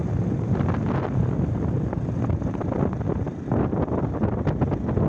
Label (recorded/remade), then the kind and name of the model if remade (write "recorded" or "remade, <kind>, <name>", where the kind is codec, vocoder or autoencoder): recorded